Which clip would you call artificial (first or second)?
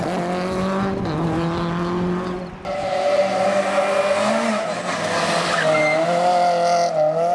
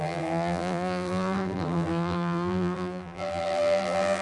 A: second